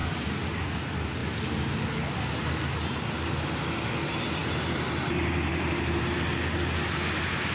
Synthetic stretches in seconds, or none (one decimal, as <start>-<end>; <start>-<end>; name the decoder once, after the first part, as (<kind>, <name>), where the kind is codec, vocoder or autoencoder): none